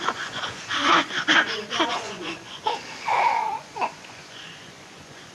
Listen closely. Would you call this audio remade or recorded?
remade